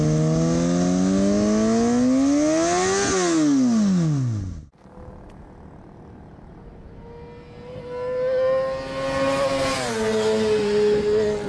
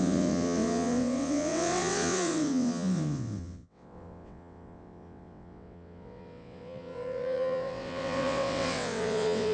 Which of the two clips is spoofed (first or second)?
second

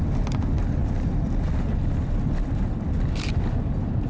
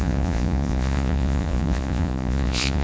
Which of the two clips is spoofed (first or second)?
second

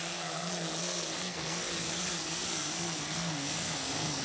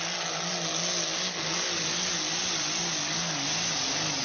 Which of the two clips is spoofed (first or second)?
first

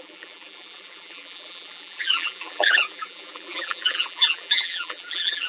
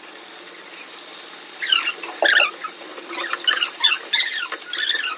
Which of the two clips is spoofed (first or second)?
first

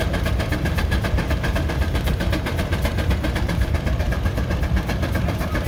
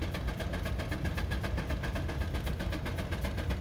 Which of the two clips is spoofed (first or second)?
first